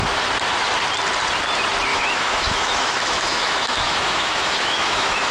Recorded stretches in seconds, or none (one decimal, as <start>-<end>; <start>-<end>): 0.0-1.9